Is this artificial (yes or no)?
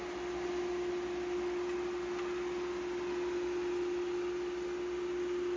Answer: no